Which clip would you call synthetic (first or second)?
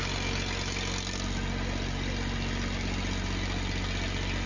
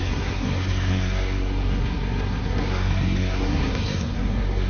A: second